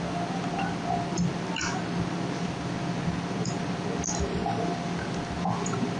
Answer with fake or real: real